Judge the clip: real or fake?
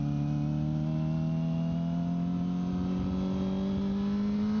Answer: real